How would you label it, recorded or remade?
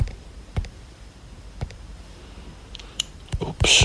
remade